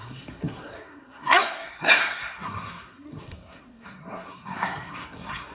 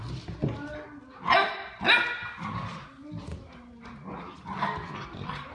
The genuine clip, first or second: second